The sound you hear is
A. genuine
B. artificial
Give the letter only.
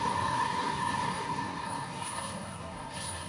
B